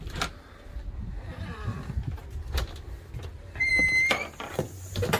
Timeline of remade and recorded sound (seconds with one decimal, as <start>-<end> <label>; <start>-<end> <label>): 0.0-5.2 recorded